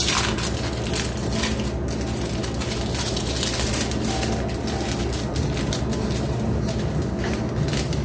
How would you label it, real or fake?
real